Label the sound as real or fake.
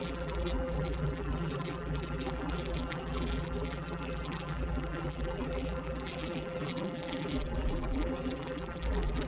fake